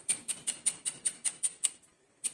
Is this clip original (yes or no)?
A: no